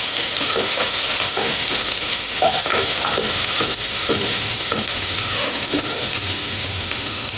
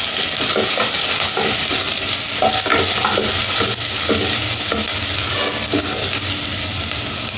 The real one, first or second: second